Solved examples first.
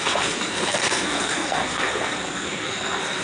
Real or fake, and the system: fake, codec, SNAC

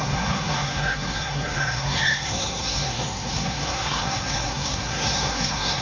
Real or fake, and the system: fake, codec, SNAC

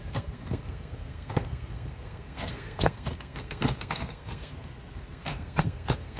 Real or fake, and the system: fake, codec, SNAC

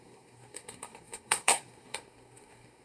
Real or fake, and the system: fake, codec, SNAC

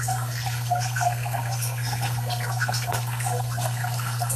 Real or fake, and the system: fake, codec, SNAC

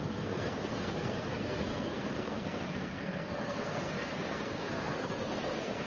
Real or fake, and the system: fake, codec, SNAC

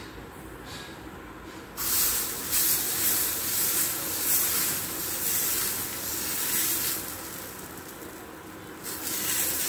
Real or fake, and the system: real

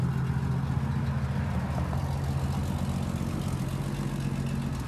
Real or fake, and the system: real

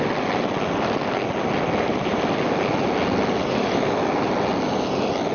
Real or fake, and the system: real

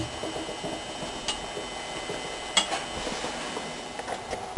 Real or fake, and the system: real